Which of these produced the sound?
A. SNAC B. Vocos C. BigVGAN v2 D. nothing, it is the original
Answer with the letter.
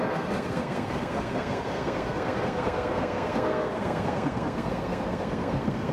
A